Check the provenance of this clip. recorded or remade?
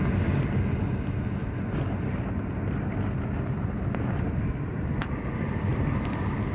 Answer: recorded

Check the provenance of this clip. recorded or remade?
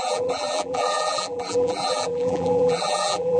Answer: remade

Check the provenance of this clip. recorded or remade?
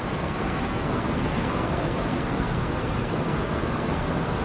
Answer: remade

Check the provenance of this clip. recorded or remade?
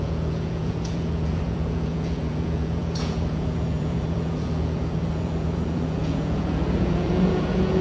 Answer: remade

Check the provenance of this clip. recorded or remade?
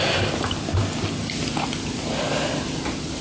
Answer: recorded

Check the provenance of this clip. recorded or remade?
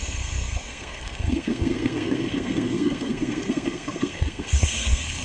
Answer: remade